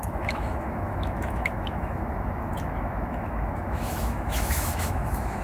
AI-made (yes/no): yes